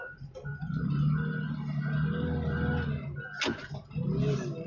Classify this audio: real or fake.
real